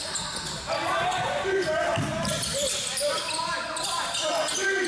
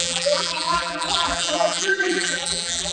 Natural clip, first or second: first